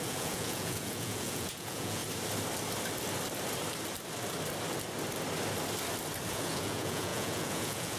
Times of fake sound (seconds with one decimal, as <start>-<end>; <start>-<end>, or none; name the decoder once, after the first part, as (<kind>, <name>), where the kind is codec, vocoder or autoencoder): 0.0-2.0 (vocoder, Vocos); 6.3-8.0